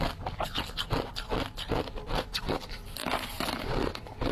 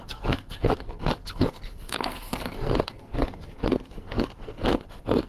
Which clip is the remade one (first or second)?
second